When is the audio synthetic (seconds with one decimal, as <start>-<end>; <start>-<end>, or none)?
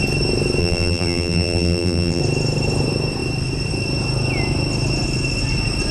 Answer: 0.6-2.2